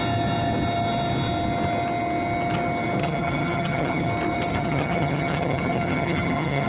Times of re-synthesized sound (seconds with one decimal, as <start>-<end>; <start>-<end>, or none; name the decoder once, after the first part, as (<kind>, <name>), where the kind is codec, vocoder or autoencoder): 3.0-4.1 (vocoder, HiFi-GAN); 4.5-6.7